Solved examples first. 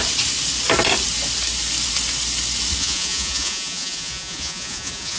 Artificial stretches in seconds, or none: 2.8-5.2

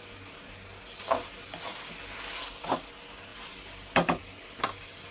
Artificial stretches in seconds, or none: none

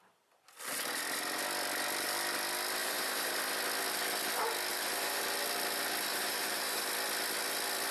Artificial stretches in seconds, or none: 2.8-3.4; 4.7-5.2; 6.1-6.9

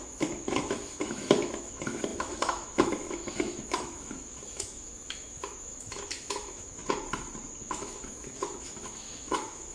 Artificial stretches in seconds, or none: 0.0-6.8; 7.6-9.7

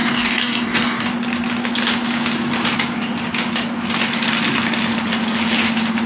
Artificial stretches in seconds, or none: 0.0-1.1

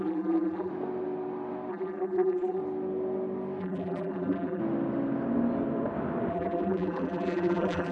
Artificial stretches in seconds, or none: 0.0-0.7; 1.7-2.6; 3.6-4.6; 6.3-7.9

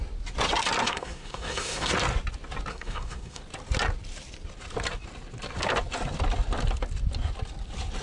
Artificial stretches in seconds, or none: 0.8-1.9; 2.7-3.4

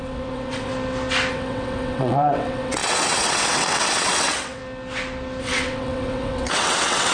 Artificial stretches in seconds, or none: 0.0-0.7; 1.3-4.6; 5.4-7.1